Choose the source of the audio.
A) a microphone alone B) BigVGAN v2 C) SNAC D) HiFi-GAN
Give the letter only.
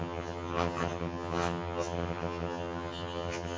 D